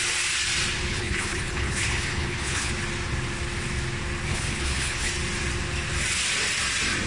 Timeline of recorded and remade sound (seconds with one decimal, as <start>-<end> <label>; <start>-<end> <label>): 0.0-0.9 recorded; 0.9-2.7 remade; 2.7-4.3 recorded; 4.3-5.1 remade; 5.1-7.1 recorded